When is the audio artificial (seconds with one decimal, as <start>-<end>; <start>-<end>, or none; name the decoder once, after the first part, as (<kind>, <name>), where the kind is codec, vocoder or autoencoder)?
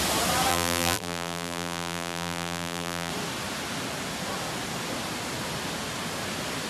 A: 0.5-3.1 (vocoder, BigVGAN v2)